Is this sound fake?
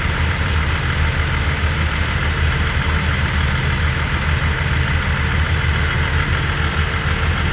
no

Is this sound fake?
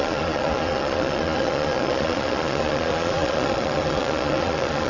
yes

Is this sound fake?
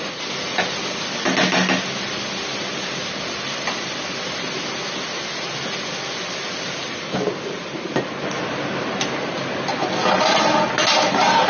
no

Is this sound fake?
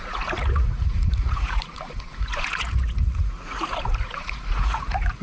yes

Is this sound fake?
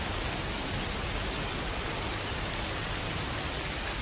no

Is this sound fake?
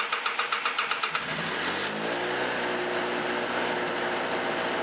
no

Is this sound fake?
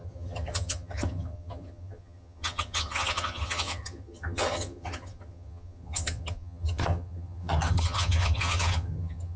yes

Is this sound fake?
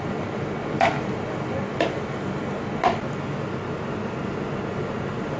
no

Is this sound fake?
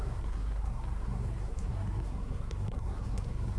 yes